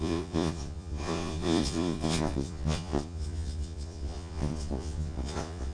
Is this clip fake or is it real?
fake